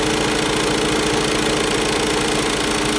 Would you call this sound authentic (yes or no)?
yes